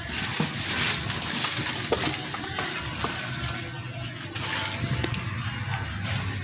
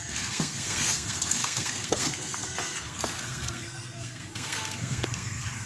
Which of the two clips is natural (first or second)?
first